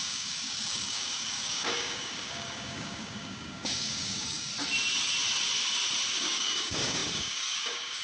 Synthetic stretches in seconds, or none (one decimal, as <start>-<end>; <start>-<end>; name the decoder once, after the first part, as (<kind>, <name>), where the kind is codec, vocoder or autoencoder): 0.0-4.5 (codec, DAC); 6.1-8.0